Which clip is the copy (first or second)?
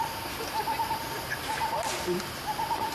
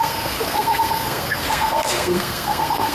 second